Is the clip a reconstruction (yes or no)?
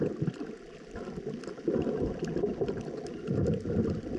no